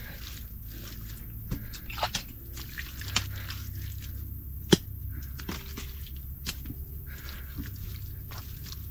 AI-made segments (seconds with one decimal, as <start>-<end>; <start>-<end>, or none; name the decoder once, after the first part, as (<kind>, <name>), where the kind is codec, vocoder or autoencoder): none